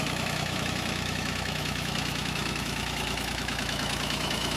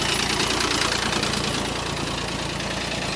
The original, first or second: second